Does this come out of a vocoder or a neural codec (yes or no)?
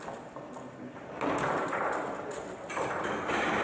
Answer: no